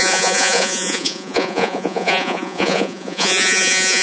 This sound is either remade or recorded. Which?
remade